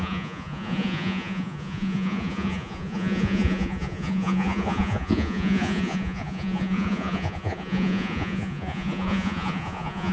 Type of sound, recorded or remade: remade